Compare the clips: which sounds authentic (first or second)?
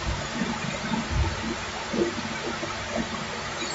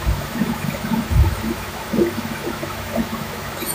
first